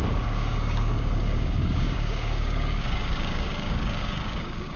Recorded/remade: remade